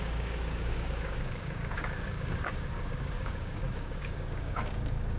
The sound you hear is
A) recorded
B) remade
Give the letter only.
B